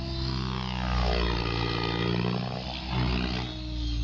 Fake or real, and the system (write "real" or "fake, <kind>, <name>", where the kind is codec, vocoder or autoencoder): real